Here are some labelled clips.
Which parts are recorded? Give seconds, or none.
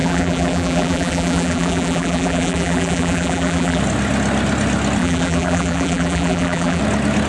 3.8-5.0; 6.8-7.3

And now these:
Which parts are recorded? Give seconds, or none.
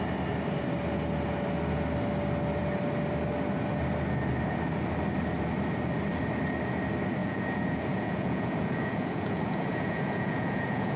0.0-7.2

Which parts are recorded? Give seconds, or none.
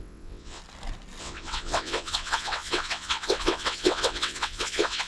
0.6-1.2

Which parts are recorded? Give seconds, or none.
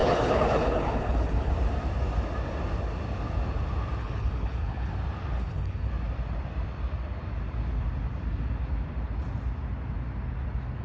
1.5-4.0; 4.9-5.4; 5.9-10.8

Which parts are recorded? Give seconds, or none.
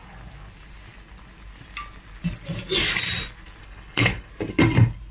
0.0-3.6; 4.3-5.1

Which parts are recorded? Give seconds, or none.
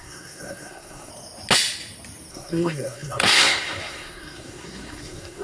1.1-2.3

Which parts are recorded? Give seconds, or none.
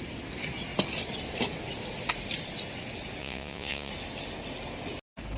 0.0-3.2; 3.9-5.4